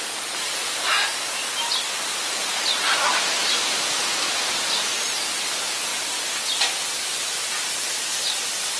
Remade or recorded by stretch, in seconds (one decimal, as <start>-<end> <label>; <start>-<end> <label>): 0.0-8.8 recorded